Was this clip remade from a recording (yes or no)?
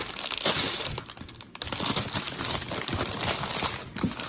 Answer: yes